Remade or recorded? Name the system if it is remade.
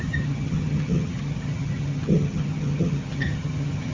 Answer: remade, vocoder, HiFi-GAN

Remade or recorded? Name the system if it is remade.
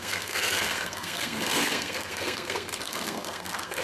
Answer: remade, codec, SNAC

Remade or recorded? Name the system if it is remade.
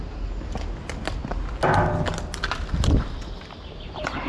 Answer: recorded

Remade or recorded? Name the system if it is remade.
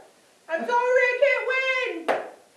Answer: recorded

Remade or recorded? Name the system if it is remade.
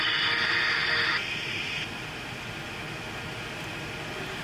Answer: recorded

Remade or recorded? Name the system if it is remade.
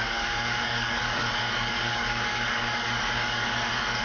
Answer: remade, codec, DAC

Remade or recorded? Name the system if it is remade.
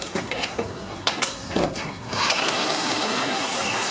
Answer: remade, codec, SNAC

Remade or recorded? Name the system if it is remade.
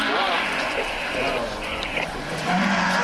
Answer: remade, vocoder, Vocos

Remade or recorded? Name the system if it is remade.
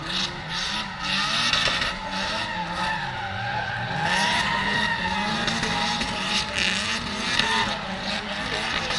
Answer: recorded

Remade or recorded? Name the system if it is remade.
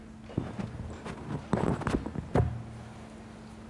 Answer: recorded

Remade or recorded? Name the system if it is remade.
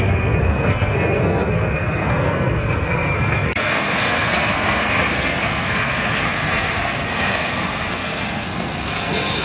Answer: remade, codec, SNAC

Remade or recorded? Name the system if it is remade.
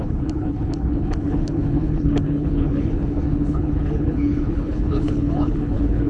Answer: remade, codec, HILCodec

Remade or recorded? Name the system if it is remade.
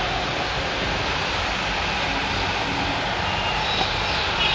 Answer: recorded